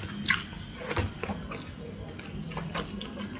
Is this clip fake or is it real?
real